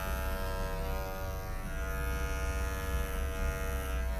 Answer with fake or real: real